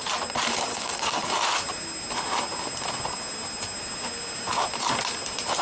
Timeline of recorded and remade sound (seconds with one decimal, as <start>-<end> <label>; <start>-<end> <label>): 0.0-0.7 recorded; 0.7-1.3 remade; 1.3-5.6 recorded